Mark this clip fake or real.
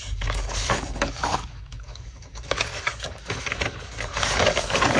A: fake